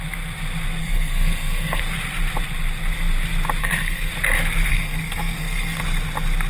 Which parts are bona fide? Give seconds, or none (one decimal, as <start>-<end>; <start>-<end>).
0.0-0.8; 1.8-3.6; 4.1-4.7; 5.8-6.5